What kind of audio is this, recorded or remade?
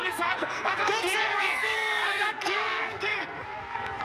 remade